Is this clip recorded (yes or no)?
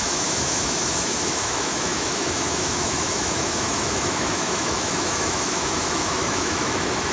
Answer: no